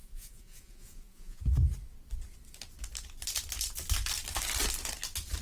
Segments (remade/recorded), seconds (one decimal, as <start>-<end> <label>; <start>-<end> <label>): 0.0-1.4 remade; 1.4-5.4 recorded